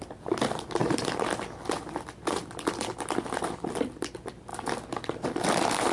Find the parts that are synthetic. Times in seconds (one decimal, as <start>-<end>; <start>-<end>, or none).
0.8-2.9